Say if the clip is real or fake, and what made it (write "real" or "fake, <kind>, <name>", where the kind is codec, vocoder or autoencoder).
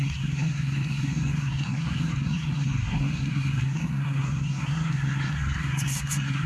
fake, codec, SNAC